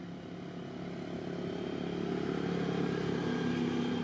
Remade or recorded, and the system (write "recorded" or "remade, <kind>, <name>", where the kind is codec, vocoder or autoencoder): recorded